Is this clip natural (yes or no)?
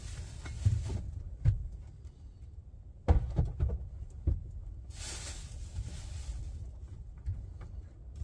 yes